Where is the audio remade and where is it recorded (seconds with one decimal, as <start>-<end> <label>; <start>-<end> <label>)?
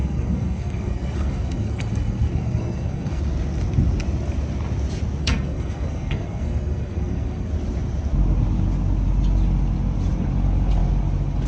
0.0-3.2 remade; 3.2-5.2 recorded; 5.2-7.5 remade; 7.5-11.5 recorded